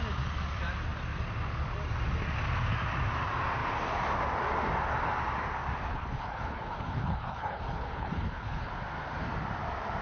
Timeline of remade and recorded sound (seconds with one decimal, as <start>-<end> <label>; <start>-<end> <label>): 0.0-5.9 recorded; 5.9-8.7 remade; 8.7-10.0 recorded

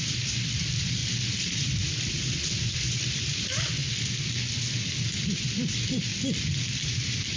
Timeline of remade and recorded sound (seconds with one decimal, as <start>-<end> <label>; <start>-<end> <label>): 0.0-3.8 remade; 3.8-4.7 recorded; 4.7-6.1 remade; 6.1-6.9 recorded; 6.9-7.4 remade

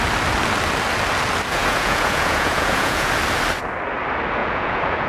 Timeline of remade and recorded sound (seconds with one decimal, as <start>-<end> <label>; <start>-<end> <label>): 0.0-1.6 recorded; 1.6-3.1 remade; 3.1-4.4 recorded; 4.4-5.1 remade

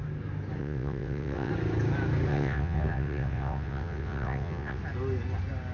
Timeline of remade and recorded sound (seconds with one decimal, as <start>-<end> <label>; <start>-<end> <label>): 0.0-0.6 recorded; 0.6-1.5 remade; 1.5-2.3 recorded; 2.3-4.8 remade; 4.8-5.7 recorded

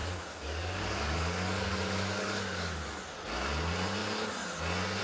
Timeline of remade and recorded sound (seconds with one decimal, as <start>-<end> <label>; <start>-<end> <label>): 0.0-3.0 remade; 3.0-5.0 recorded

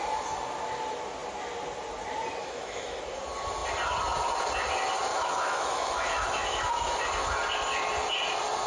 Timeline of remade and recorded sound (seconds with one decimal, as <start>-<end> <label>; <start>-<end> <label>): 0.0-2.4 recorded; 2.4-3.0 remade; 3.0-5.1 recorded; 5.1-6.9 remade; 6.9-8.7 recorded

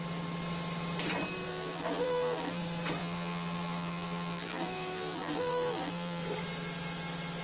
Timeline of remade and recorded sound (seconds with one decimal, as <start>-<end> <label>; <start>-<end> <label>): 0.0-1.5 recorded; 1.5-2.6 remade; 2.6-3.0 recorded; 3.0-6.2 remade; 6.2-7.4 recorded